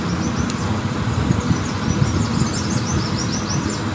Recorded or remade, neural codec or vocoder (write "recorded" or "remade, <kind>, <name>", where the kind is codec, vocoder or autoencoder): recorded